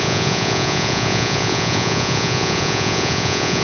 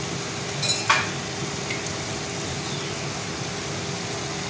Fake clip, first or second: first